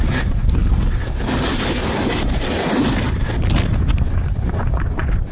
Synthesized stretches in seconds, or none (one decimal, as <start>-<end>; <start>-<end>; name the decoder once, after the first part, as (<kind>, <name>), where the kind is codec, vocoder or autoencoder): 0.0-0.6 (vocoder, Vocos); 3.8-5.3